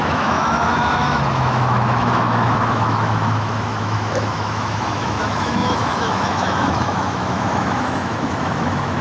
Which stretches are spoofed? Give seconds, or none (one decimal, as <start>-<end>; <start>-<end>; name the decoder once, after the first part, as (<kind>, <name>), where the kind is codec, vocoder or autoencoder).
0.0-9.0 (autoencoder, DAC-VAE)